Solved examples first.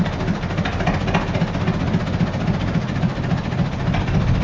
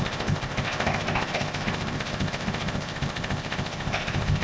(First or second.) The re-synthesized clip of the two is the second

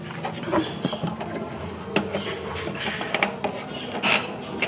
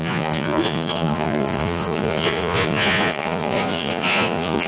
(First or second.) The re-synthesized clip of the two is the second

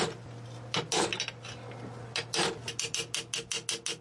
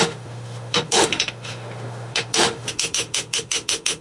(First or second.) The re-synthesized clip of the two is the second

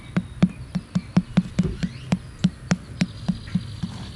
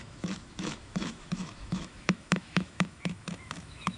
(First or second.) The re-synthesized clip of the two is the second